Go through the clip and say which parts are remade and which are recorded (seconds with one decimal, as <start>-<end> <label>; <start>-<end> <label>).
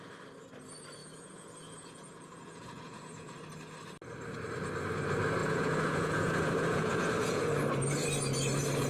0.0-1.0 recorded; 1.0-3.3 remade; 3.3-5.4 recorded; 5.4-7.5 remade; 7.5-8.9 recorded